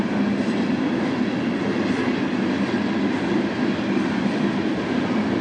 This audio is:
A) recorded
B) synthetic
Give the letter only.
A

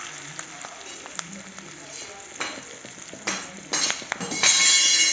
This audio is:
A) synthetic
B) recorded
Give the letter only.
B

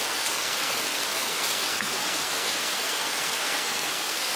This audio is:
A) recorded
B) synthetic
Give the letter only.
B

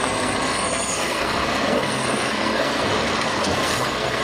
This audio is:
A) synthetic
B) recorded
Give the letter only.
A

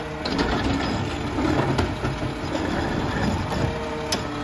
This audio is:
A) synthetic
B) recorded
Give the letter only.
B